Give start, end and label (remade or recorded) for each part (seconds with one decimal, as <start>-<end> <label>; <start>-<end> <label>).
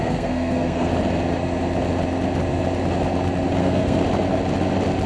0.0-0.9 remade; 0.9-3.6 recorded; 3.6-4.0 remade; 4.0-5.1 recorded